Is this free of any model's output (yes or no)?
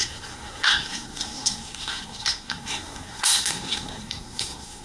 no